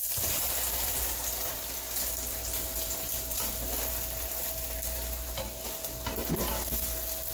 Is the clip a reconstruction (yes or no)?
no